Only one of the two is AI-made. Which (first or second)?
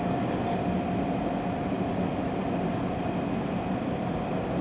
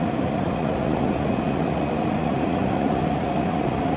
second